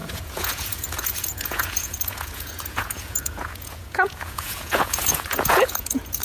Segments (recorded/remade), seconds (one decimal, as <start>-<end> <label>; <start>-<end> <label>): 0.0-6.2 remade